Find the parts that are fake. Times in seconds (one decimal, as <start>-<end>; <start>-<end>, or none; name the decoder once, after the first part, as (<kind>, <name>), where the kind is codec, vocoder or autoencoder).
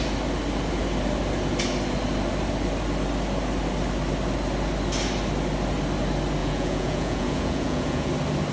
6.4-8.1 (vocoder, Vocos)